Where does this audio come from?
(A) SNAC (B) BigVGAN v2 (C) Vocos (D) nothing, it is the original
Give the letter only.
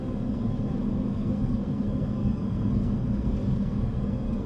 A